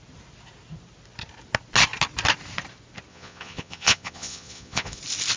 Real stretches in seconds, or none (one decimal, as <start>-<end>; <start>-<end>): 0.0-3.1; 5.0-5.4